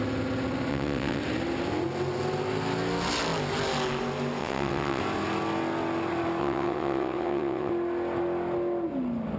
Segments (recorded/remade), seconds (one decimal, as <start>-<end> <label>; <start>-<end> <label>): 0.0-0.7 recorded; 0.7-1.2 remade; 1.2-4.4 recorded; 4.4-5.0 remade; 5.0-6.4 recorded; 6.4-7.7 remade; 7.7-9.4 recorded